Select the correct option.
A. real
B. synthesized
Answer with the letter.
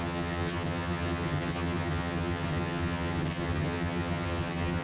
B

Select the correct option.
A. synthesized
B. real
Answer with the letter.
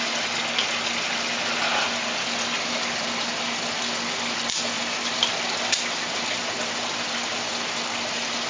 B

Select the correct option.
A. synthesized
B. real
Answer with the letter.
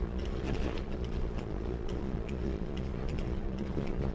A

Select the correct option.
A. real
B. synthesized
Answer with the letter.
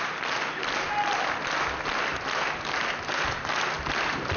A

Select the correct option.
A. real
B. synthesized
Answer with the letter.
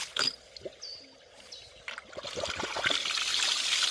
A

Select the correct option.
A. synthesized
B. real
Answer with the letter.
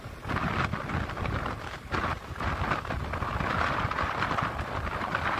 B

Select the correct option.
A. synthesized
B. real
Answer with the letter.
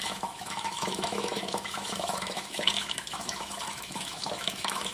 A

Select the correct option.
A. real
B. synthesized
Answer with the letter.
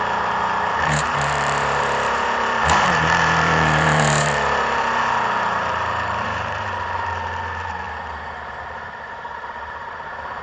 B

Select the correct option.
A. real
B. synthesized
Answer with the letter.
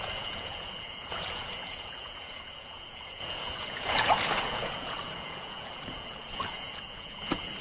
B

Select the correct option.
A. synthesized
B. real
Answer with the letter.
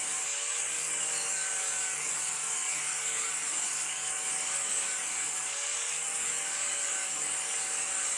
A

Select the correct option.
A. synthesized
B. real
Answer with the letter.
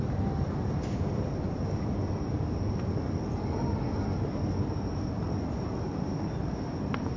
B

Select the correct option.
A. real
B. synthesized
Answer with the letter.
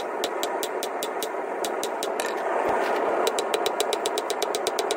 A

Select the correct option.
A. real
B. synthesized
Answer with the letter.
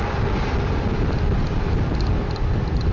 A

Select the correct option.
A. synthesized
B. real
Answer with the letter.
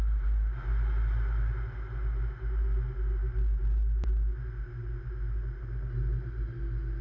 B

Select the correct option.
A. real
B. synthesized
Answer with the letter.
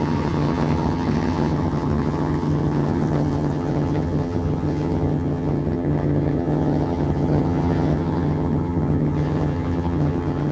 B